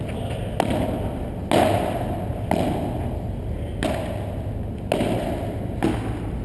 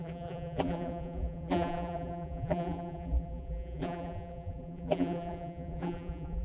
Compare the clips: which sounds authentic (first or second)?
first